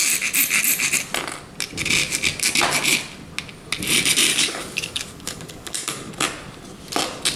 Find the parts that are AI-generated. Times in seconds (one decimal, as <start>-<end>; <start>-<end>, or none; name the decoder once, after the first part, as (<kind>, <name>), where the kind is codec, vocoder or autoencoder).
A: 4.3-6.1 (codec, DAC)